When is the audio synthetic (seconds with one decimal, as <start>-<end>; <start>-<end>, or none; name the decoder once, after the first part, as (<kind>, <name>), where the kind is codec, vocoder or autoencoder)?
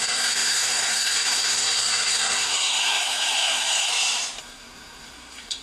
0.0-3.9 (codec, SNAC); 4.4-5.6